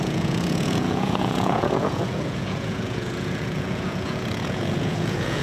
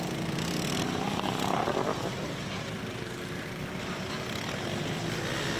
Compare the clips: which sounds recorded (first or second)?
second